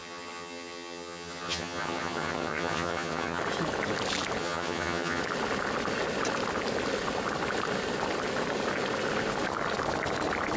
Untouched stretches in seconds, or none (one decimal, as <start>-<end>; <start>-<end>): 3.4-4.4; 5.2-10.6